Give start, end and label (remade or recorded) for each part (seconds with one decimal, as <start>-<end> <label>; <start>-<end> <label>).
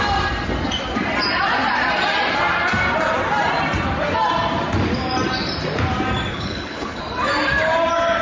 0.0-6.3 recorded; 6.3-7.0 remade; 7.0-8.2 recorded